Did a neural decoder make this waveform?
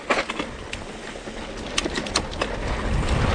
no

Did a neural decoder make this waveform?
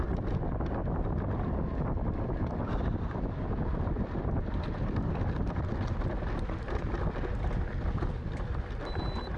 no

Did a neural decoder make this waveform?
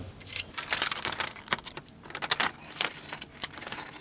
no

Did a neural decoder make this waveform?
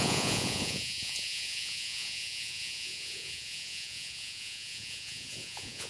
yes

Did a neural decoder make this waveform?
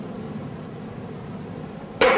no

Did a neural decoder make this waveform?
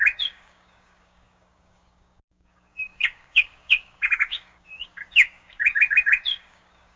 yes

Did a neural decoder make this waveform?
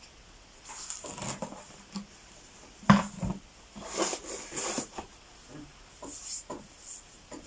no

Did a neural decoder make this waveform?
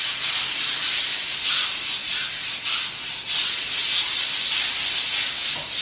no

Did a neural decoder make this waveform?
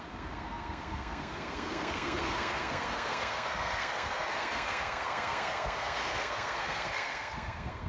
yes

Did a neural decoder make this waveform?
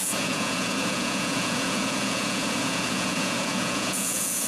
yes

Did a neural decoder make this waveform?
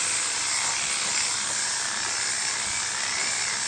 no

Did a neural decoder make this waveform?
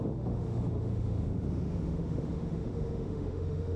yes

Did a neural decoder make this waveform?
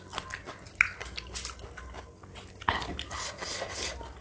no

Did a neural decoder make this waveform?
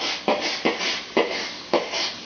no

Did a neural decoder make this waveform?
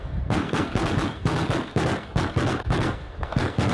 yes